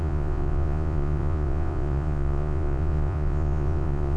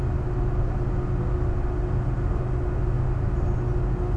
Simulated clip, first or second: first